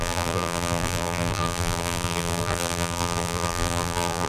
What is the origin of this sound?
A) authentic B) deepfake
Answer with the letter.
B